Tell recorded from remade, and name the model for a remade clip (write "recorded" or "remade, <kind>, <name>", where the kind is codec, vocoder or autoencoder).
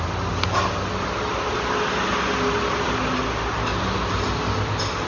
recorded